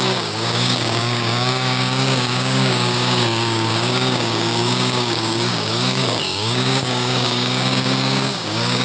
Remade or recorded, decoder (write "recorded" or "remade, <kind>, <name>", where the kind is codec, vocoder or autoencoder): remade, codec, DAC